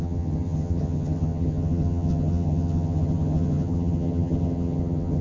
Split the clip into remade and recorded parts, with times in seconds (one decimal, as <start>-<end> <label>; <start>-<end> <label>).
0.0-5.2 remade